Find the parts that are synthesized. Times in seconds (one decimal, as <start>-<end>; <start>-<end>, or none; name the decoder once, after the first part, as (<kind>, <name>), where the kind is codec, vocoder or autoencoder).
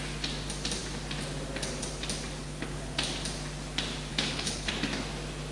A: 2.4-3.0 (codec, HILCodec); 4.1-4.7